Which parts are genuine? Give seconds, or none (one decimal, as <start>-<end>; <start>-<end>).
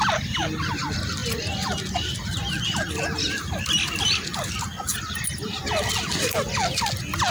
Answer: 0.0-7.3